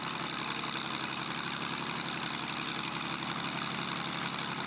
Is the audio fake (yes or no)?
no